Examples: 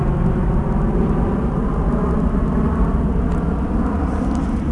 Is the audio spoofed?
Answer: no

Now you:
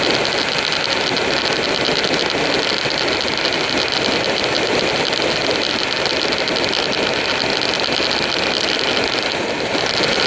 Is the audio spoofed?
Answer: no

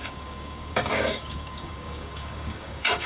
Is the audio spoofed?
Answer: yes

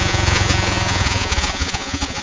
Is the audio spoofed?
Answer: yes